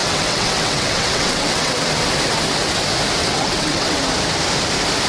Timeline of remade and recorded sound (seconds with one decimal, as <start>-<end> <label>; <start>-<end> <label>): 0.0-1.7 remade; 1.7-3.2 recorded; 3.2-4.0 remade; 4.0-5.1 recorded